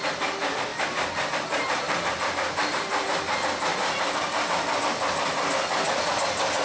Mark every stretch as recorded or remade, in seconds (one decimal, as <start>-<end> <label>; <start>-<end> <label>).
0.0-0.7 recorded; 0.7-2.2 remade; 2.2-2.6 recorded; 2.6-3.2 remade; 3.2-3.7 recorded; 3.7-4.5 remade; 4.5-6.6 recorded

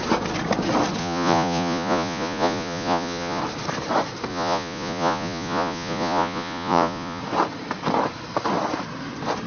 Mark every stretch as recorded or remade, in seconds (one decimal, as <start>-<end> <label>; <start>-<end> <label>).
0.0-1.0 recorded; 1.0-3.4 remade; 3.4-4.3 recorded; 4.3-7.2 remade; 7.2-9.5 recorded

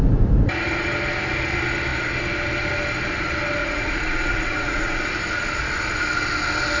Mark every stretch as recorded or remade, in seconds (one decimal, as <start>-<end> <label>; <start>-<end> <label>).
0.0-3.6 recorded; 3.6-5.0 remade; 5.0-6.8 recorded

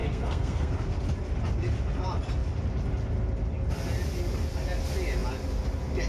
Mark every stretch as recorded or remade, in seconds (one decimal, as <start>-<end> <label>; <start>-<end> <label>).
0.0-0.7 remade; 0.7-6.1 recorded

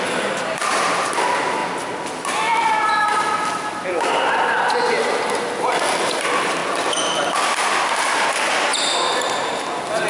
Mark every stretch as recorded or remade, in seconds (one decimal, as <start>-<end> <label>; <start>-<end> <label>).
0.0-10.1 recorded

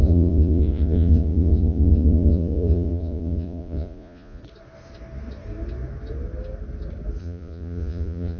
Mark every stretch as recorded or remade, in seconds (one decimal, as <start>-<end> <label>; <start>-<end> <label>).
0.0-4.4 remade; 4.4-7.2 recorded; 7.2-8.4 remade